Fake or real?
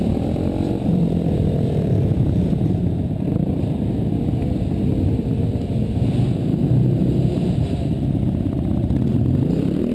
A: fake